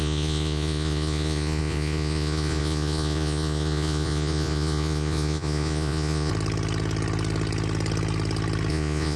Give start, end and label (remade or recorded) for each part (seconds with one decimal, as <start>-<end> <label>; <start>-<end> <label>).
0.0-6.3 remade; 6.3-8.7 recorded; 8.7-9.2 remade